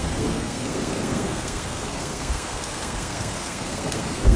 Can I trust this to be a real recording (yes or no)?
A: no